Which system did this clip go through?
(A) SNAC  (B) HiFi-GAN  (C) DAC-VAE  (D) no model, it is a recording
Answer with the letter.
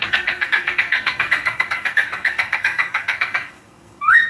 A